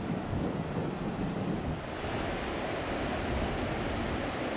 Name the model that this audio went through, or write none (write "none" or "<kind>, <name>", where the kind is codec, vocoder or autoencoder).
none